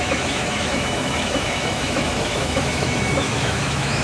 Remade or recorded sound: remade